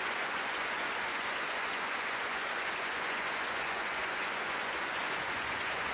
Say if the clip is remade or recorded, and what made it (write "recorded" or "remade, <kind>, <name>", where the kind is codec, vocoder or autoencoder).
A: remade, vocoder, Vocos